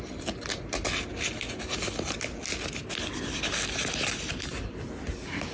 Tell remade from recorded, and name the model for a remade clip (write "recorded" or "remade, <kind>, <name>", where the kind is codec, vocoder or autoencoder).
recorded